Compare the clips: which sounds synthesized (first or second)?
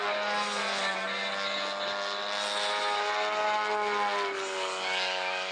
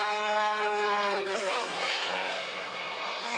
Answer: second